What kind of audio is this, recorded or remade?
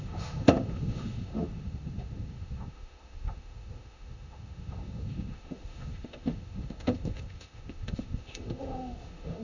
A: remade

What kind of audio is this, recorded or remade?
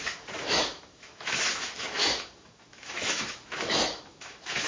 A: remade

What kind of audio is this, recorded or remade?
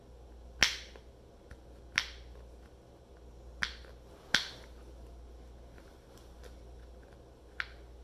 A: recorded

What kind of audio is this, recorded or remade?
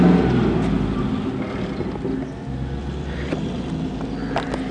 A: recorded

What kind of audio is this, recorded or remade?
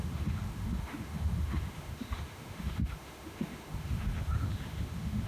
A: remade